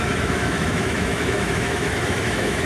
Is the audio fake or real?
fake